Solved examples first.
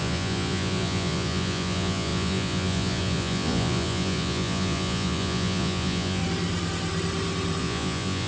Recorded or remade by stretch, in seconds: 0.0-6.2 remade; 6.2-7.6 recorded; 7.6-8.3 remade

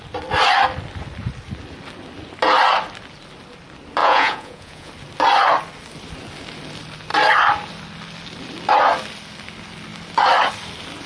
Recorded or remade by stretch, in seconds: 0.0-4.0 recorded; 4.0-4.9 remade; 4.9-11.1 recorded

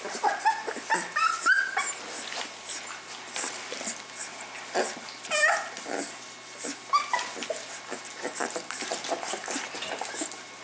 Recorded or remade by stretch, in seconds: 0.0-10.6 recorded